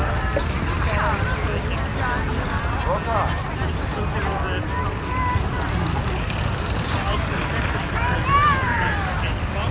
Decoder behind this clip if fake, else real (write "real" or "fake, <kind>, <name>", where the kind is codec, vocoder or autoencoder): real